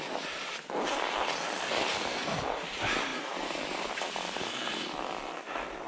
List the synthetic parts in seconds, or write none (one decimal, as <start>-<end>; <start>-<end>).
none